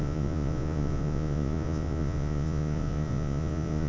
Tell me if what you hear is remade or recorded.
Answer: remade